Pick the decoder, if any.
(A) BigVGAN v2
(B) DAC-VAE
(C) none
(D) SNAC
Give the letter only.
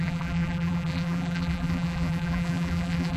A